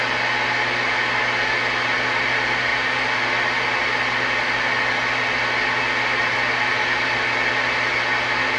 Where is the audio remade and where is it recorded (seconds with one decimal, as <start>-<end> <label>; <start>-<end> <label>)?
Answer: 0.0-8.6 recorded